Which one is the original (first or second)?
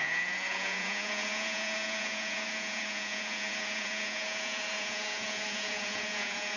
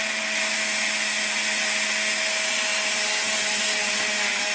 second